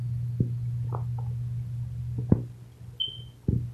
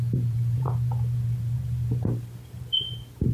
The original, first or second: first